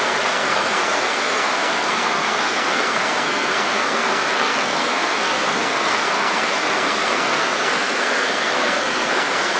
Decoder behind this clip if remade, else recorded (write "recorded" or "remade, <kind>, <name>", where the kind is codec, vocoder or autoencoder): remade, codec, SNAC